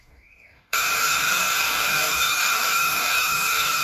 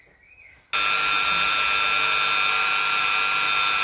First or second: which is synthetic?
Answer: first